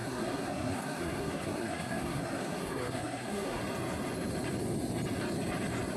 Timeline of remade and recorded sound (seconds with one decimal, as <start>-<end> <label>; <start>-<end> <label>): 0.0-3.6 remade; 3.6-6.0 recorded